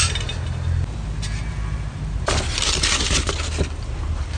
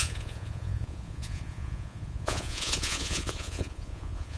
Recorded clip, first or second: first